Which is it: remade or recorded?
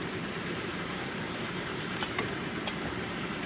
remade